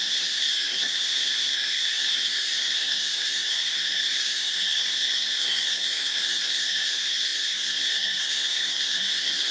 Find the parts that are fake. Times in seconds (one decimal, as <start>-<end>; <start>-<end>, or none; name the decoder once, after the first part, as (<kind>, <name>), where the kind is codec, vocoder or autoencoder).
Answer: 0.0-9.5 (codec, SNAC)